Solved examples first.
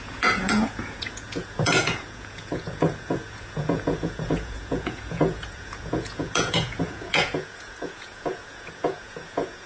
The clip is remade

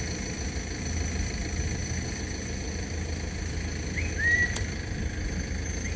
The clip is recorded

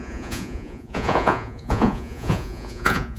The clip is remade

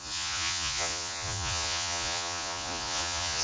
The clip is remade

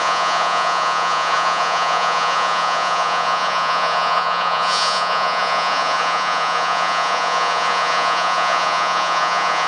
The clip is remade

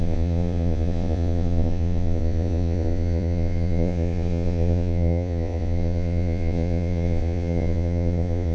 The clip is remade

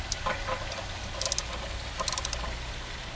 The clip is recorded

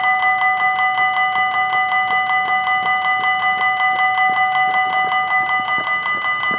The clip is recorded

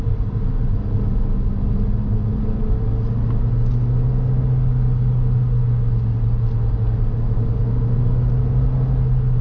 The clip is recorded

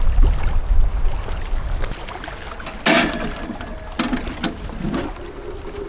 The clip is recorded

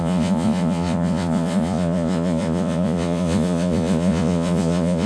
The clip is remade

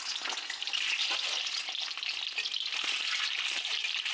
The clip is recorded